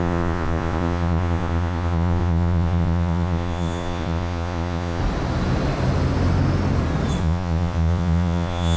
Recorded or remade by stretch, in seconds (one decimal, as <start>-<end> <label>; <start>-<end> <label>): 0.0-5.0 remade; 5.0-7.2 recorded; 7.2-8.8 remade